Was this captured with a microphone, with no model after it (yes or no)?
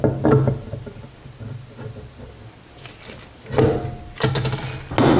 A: yes